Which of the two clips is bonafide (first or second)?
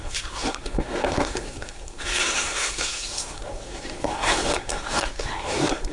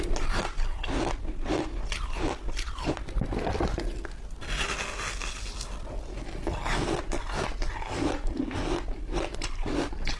second